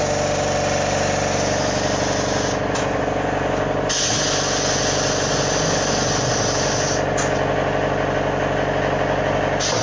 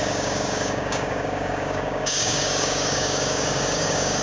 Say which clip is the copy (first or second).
second